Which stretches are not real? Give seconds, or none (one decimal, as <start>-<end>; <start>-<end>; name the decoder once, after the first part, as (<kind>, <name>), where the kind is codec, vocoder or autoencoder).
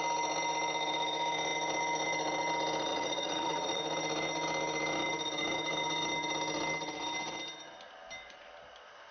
2.9-3.8 (vocoder, Vocos)